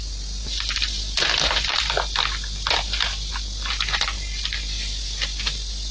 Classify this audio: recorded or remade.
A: recorded